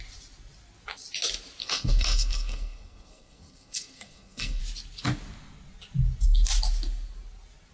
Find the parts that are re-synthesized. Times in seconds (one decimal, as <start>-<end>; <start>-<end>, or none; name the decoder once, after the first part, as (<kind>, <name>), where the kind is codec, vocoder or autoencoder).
1.6-4.6 (codec, SNAC)